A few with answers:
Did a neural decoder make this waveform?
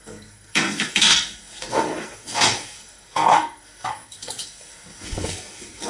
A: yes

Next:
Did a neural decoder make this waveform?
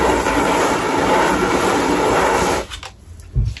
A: no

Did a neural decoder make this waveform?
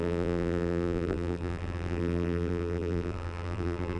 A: yes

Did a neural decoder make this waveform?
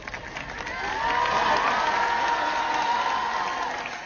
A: no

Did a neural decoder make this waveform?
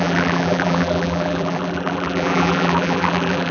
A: yes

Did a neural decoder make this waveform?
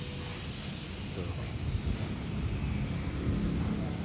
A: no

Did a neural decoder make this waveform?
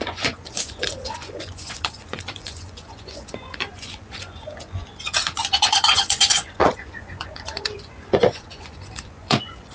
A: yes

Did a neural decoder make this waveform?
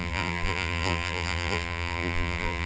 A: yes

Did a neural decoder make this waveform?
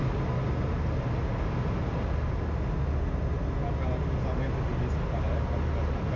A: no